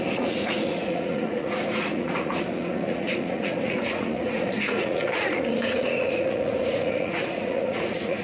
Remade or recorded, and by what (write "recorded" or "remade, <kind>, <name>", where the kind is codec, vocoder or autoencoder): remade, vocoder, Vocos